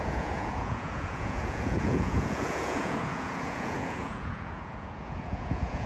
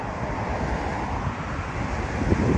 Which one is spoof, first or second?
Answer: first